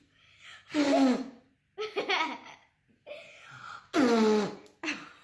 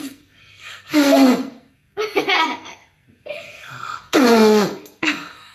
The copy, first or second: second